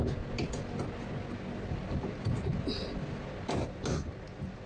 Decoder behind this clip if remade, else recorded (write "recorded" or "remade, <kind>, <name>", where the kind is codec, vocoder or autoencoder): recorded